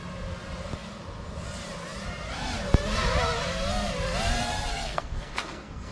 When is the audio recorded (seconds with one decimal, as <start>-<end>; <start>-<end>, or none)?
0.0-4.7